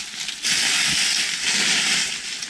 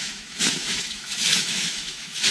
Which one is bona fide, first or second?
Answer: first